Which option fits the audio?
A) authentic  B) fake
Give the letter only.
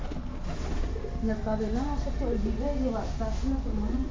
A